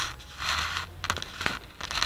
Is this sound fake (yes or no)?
no